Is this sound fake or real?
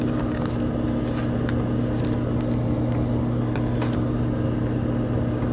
real